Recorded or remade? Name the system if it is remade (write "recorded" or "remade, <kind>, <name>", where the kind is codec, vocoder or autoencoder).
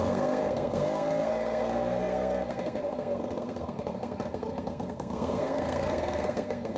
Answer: remade, codec, SNAC